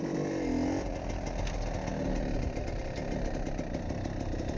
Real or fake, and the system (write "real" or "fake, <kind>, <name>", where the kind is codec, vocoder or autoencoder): real